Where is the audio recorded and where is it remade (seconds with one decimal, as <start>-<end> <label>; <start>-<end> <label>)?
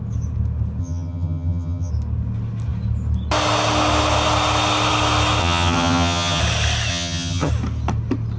0.0-0.8 recorded; 0.8-1.9 remade; 1.9-5.4 recorded; 5.4-6.4 remade; 6.4-6.9 recorded; 6.9-7.5 remade; 7.5-8.4 recorded